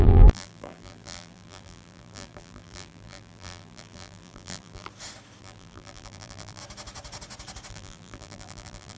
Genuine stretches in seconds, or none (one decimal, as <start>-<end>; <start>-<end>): 4.9-5.4; 6.6-7.7